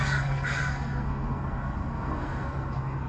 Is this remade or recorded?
remade